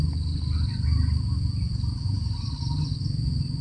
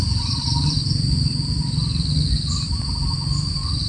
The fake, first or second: second